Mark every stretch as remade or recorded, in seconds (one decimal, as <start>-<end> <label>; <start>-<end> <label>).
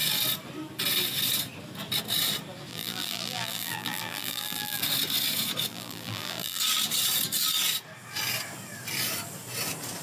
0.0-2.7 recorded; 2.7-4.8 remade; 4.8-5.7 recorded; 5.7-6.6 remade; 6.6-10.0 recorded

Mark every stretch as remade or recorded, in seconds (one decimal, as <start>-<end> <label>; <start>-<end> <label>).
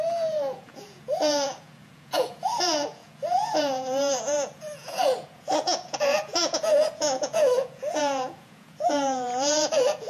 0.0-10.1 remade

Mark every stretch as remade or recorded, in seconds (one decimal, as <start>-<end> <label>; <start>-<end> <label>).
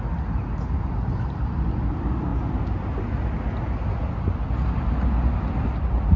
0.0-6.2 recorded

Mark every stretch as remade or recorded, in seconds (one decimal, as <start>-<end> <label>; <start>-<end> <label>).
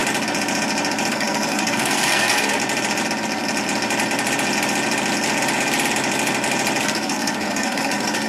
0.0-1.1 recorded; 1.1-2.6 remade; 2.6-6.8 recorded; 6.8-8.3 remade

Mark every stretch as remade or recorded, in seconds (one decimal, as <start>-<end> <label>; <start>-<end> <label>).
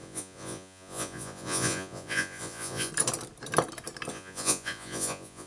0.0-2.9 remade; 2.9-4.1 recorded; 4.1-5.5 remade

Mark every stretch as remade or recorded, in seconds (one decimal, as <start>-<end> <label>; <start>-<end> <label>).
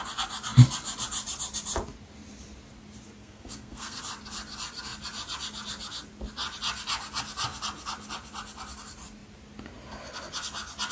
0.0-3.2 recorded; 3.2-4.0 remade; 4.0-10.9 recorded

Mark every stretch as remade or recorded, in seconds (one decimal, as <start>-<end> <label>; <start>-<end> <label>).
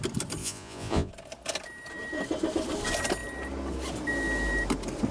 0.0-0.4 recorded; 0.4-1.1 remade; 1.1-5.1 recorded